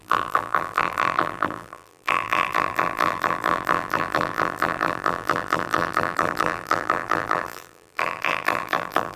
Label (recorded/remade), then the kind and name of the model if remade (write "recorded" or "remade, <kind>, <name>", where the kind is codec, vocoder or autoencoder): remade, vocoder, BigVGAN v2